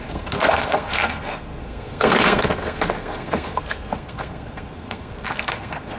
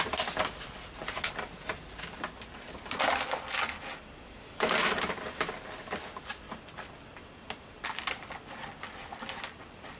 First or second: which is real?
second